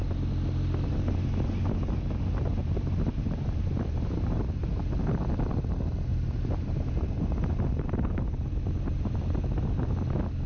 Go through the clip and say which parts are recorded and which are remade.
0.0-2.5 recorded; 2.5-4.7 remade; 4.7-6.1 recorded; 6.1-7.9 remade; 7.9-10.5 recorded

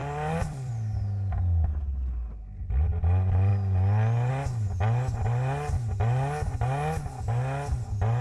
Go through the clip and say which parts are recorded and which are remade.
0.0-0.7 remade; 0.7-8.2 recorded

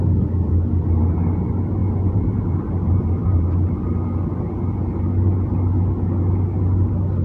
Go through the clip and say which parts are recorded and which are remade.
0.0-1.8 recorded; 1.8-3.7 remade; 3.7-7.2 recorded

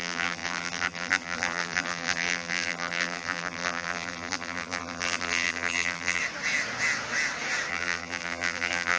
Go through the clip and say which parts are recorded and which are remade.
0.0-6.2 remade; 6.2-7.7 recorded; 7.7-9.0 remade